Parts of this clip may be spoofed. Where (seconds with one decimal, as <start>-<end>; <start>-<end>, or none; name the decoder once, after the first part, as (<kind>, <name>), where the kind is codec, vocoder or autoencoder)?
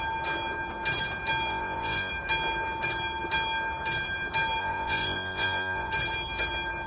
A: 1.5-2.1 (vocoder, Vocos); 4.6-5.9